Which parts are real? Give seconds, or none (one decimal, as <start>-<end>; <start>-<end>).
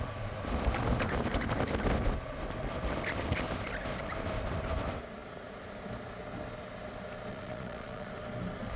0.0-7.3; 8.1-8.8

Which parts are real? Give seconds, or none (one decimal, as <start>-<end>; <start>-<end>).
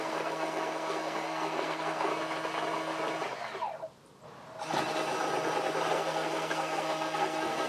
2.1-5.9